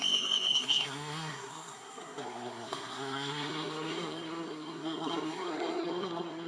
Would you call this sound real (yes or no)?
no